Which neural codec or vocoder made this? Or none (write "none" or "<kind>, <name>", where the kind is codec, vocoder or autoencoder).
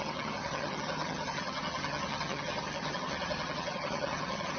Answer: vocoder, HiFi-GAN